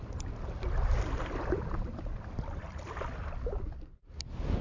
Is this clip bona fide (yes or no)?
yes